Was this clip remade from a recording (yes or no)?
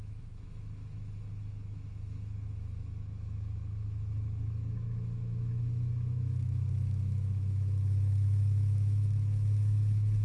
yes